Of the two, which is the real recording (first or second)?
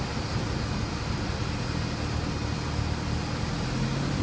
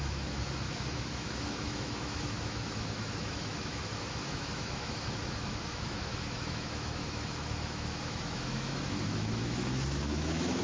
first